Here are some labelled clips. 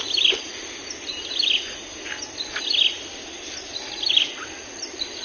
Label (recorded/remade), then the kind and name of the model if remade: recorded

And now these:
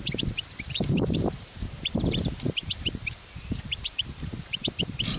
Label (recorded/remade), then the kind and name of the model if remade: remade, vocoder, BigVGAN v2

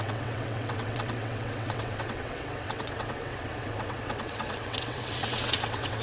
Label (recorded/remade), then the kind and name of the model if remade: remade, vocoder, WaveNeXt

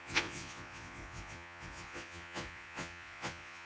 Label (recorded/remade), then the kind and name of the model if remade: remade, vocoder, Vocos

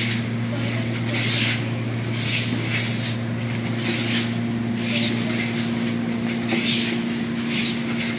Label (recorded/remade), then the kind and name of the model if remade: recorded